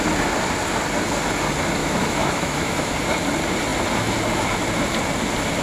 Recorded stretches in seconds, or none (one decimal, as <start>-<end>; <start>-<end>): 0.0-1.8; 2.9-5.6